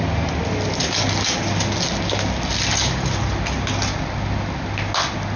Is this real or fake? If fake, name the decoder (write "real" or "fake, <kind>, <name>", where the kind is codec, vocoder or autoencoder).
real